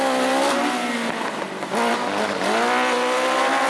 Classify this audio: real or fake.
real